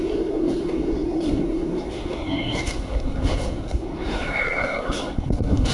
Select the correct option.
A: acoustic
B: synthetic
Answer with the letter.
B